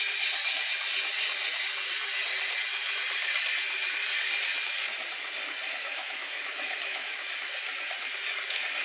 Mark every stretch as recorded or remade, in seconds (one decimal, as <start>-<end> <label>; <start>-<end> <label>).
0.0-5.8 recorded; 5.8-7.2 remade; 7.2-8.8 recorded